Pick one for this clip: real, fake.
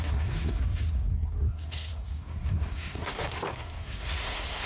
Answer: fake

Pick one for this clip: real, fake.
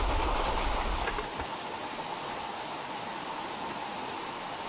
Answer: real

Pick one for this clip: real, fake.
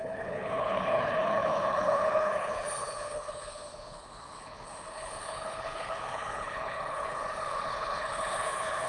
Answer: fake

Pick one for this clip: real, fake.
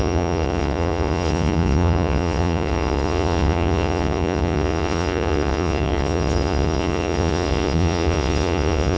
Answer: fake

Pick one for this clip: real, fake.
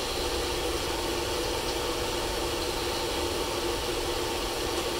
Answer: real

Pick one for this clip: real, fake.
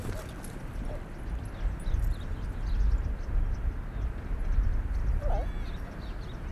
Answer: real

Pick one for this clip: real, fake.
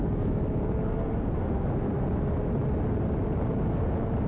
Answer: real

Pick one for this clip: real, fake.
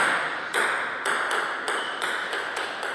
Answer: real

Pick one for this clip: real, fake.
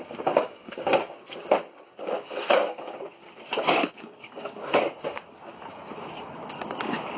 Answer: fake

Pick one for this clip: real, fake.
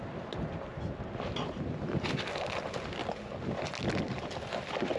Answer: real